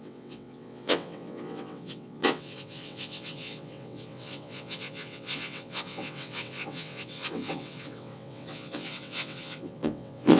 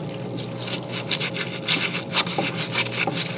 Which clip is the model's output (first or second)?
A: first